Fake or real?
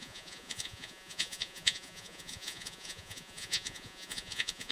fake